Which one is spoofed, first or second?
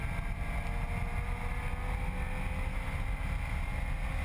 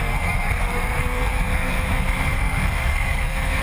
second